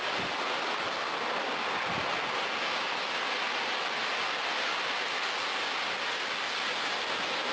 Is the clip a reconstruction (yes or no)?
no